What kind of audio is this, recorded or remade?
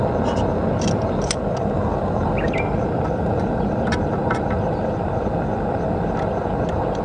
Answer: recorded